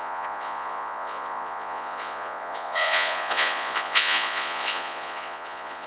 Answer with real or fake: fake